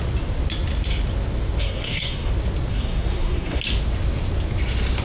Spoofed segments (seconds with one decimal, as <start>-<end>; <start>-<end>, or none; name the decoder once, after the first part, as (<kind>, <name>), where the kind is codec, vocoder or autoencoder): 1.6-2.3 (codec, SNAC); 2.7-3.6